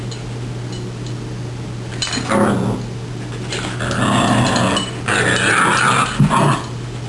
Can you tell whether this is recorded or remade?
recorded